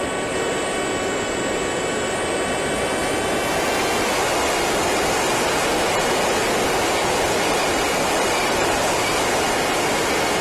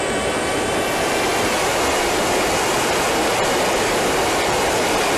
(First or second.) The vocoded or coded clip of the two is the second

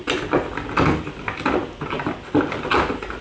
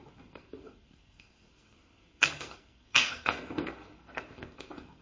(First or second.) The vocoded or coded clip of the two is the second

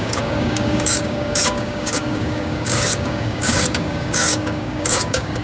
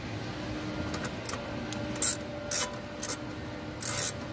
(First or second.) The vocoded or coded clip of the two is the first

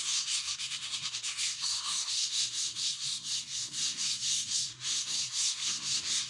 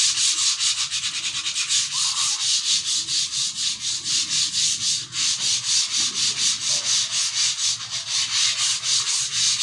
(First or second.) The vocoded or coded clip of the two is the first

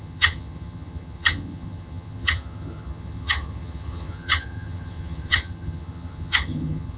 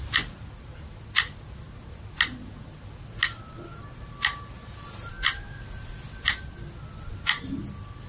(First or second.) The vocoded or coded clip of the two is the first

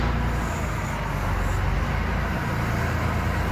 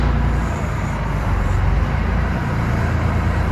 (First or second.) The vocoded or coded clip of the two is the second